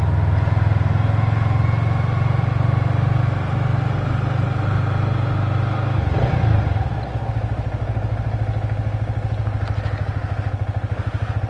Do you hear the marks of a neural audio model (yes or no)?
no